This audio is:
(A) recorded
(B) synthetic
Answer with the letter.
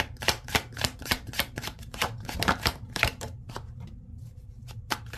B